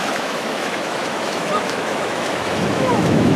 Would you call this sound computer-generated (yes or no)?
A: yes